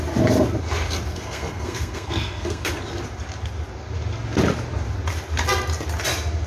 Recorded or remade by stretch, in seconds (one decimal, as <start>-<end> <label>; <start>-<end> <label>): 0.0-1.1 recorded; 1.1-2.8 remade; 2.8-6.5 recorded